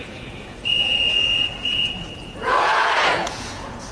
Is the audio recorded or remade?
remade